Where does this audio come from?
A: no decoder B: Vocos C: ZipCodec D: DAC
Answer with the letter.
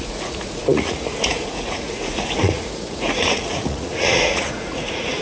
B